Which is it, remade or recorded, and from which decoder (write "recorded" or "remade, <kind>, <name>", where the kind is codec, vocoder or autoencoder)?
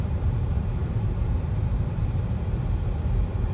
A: remade, vocoder, BigVGAN v2